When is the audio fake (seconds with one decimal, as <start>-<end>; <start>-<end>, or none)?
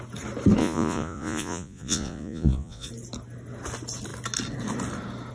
0.6-2.9